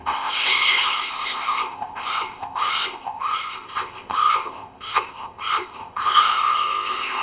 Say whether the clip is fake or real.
fake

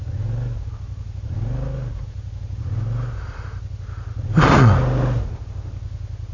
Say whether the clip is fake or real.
real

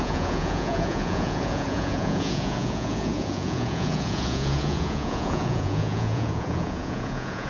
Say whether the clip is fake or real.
fake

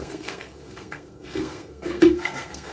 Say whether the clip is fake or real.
fake